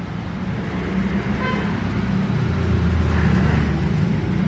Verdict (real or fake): real